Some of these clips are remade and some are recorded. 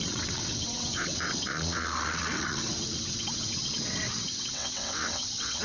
remade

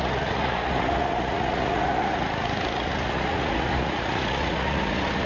remade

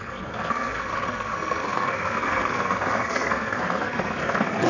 remade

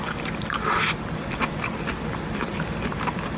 recorded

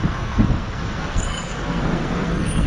remade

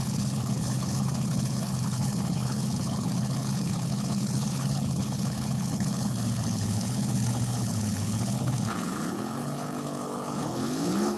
remade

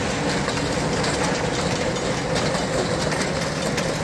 recorded